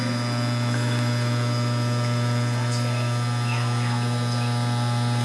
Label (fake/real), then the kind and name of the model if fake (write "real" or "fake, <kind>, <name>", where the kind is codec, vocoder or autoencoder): fake, vocoder, BigVGAN v2